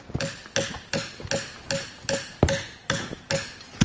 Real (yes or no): yes